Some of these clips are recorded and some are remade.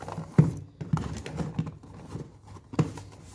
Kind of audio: recorded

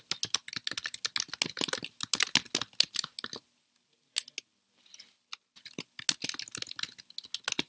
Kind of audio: recorded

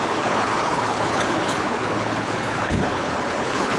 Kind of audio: remade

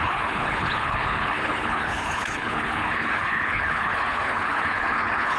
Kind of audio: remade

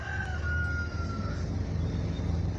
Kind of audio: recorded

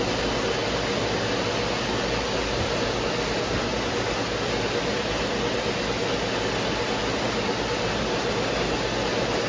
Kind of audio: recorded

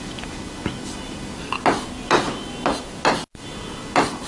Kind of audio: recorded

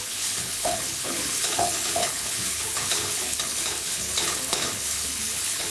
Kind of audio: remade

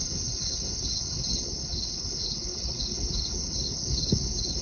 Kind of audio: remade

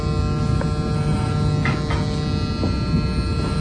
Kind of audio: recorded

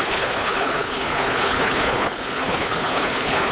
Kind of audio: remade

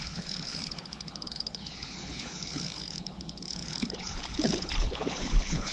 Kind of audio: remade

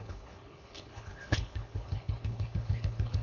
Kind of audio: remade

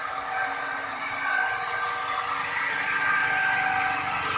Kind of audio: recorded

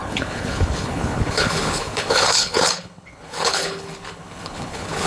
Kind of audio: remade